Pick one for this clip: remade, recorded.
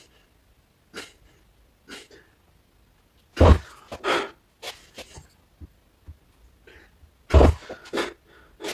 recorded